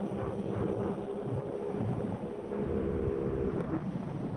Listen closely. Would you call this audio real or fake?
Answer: real